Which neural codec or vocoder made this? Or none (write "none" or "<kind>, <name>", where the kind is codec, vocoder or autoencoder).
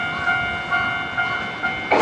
none